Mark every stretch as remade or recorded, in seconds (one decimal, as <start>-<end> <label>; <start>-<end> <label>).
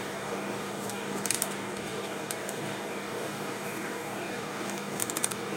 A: 0.0-5.6 remade